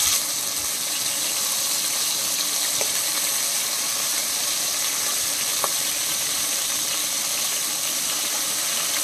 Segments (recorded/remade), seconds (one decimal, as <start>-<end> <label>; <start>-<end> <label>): 0.0-4.2 recorded; 4.2-9.0 remade